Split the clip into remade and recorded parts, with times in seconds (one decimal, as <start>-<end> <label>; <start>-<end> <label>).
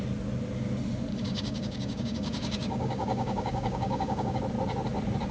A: 0.0-1.2 recorded; 1.2-4.4 remade; 4.4-5.3 recorded